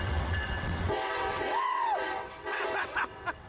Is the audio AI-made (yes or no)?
yes